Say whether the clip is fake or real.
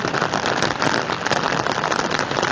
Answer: real